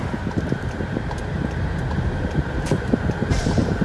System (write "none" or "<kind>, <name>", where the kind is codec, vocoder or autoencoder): vocoder, BigVGAN v2